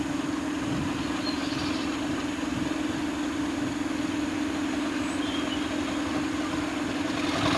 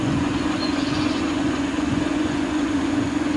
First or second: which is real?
first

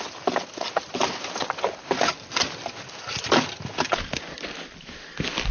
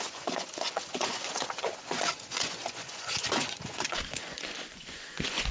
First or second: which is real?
first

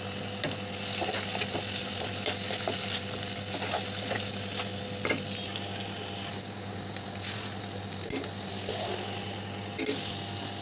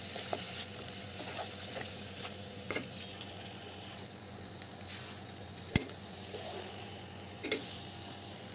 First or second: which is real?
first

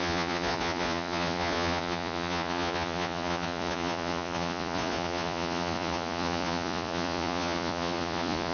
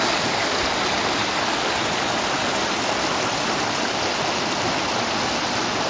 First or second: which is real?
second